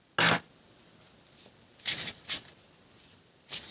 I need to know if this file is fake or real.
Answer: real